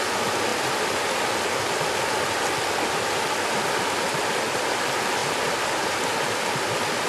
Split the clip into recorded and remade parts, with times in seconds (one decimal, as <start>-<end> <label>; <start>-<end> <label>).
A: 0.0-7.1 recorded